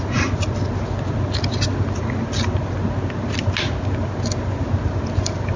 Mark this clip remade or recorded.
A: recorded